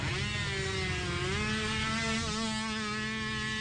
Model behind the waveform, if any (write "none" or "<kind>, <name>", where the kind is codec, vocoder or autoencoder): none